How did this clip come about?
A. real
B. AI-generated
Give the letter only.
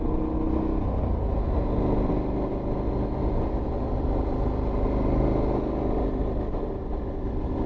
A